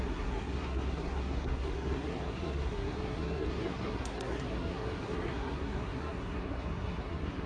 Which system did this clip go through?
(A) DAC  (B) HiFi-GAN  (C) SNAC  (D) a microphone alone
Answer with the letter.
C